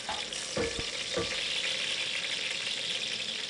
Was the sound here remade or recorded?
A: recorded